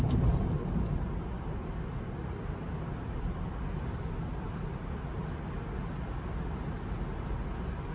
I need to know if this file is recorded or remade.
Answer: recorded